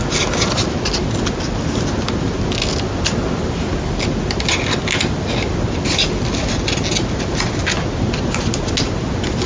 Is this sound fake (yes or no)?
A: no